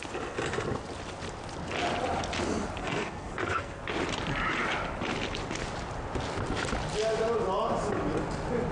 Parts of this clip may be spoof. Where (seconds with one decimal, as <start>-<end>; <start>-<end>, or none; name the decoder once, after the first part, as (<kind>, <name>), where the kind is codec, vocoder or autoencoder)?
2.8-3.8 (codec, SNAC)